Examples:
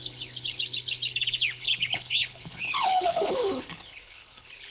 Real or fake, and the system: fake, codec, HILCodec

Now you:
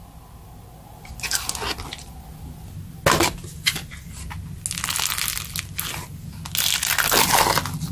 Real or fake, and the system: real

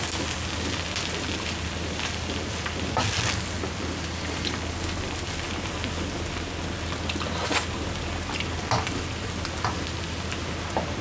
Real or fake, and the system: real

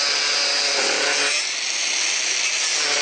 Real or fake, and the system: real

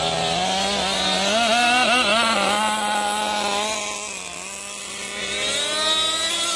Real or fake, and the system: real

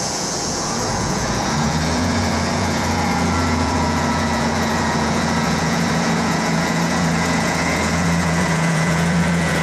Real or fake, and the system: fake, vocoder, Vocos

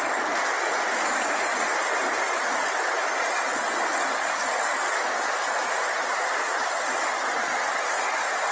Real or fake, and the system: real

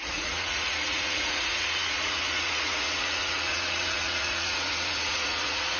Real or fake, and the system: fake, vocoder, Vocos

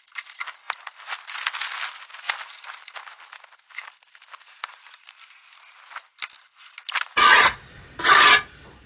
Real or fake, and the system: real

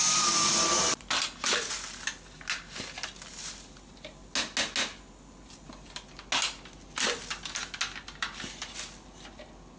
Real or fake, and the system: real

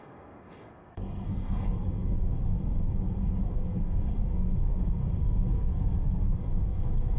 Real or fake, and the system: fake, codec, SNAC